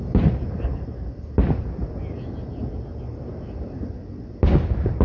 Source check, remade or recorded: recorded